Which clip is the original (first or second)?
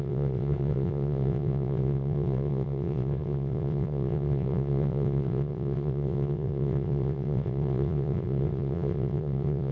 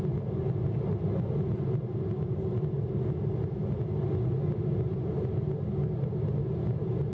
second